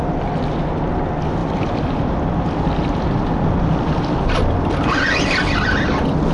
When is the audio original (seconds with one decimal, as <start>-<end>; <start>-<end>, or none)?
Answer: 0.0-1.4; 5.0-6.3